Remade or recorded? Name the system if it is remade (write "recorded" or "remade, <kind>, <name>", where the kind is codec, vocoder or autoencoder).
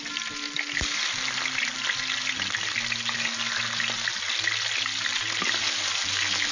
recorded